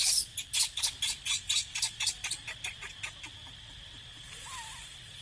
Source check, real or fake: real